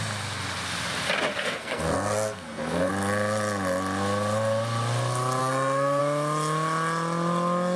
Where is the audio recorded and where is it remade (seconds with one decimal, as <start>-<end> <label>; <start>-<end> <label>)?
0.0-1.3 recorded; 1.3-2.9 remade; 2.9-5.4 recorded; 5.4-6.0 remade; 6.0-7.8 recorded